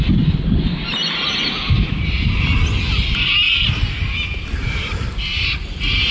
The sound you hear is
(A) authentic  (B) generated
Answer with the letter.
A